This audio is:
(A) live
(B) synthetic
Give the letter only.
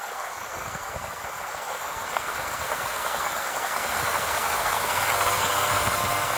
B